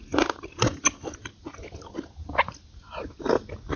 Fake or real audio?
real